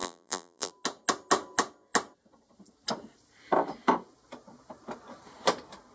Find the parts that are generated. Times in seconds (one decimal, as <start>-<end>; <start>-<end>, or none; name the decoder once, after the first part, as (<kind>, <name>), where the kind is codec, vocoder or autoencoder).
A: 0.0-0.7 (vocoder, BigVGAN v2)